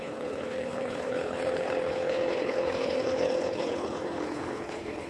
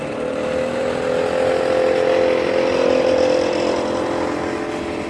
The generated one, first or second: first